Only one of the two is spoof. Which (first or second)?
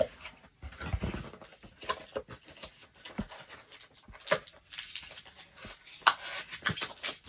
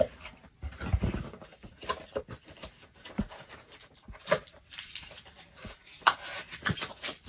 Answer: second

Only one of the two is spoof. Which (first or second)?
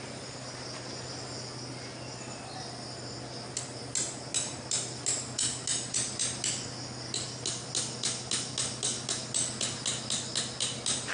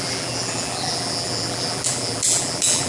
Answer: second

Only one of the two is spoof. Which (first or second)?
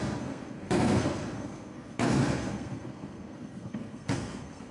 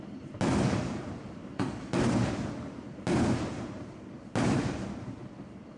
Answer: first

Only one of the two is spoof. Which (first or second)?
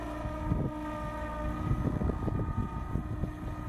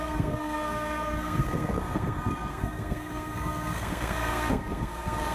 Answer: second